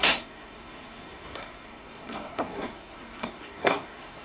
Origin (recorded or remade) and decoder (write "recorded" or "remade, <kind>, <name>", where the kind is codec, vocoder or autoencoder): remade, codec, SNAC